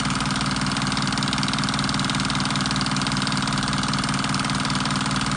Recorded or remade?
recorded